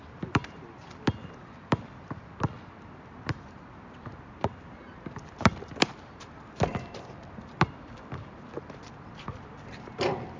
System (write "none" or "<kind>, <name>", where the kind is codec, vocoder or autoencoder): vocoder, BigVGAN v2